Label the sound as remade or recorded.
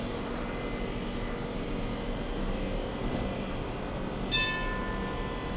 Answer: recorded